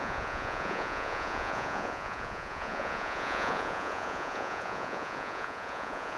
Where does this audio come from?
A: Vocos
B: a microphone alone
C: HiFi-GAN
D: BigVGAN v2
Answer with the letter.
A